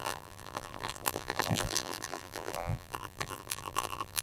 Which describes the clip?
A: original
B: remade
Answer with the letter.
B